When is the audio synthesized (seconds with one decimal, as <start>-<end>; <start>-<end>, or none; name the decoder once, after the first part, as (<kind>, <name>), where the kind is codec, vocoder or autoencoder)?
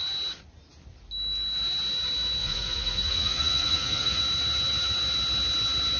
2.4-4.2 (vocoder, Vocos)